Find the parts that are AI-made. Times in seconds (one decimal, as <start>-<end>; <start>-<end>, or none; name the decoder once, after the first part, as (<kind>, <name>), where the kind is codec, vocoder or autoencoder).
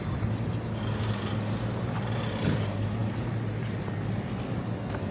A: none